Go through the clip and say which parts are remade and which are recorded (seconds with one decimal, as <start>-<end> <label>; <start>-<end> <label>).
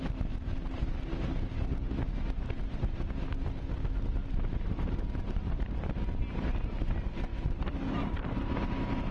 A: 0.0-4.2 recorded; 4.2-6.0 remade; 6.0-7.3 recorded; 7.3-9.1 remade